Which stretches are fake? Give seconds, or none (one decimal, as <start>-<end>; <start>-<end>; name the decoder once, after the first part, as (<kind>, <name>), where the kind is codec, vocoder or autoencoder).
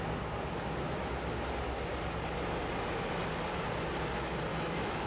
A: 4.5-5.1 (autoencoder, DAC-VAE)